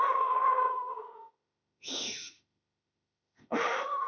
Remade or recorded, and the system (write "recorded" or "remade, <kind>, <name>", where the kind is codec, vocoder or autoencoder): remade, autoencoder, DAC-VAE